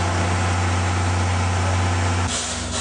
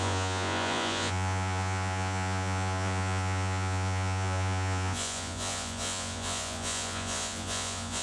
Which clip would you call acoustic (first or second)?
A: first